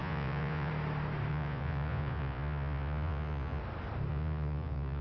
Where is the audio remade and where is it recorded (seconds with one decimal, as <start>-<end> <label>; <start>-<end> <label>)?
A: 0.0-0.7 remade; 0.7-1.3 recorded; 1.3-3.6 remade; 3.6-4.1 recorded; 4.1-5.0 remade